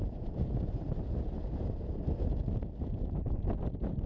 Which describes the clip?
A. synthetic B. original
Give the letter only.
B